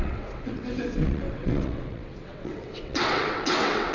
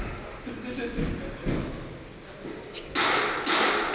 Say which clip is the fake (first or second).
first